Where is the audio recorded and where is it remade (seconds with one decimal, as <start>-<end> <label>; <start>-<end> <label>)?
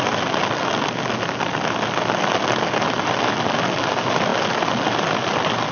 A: 0.0-5.7 recorded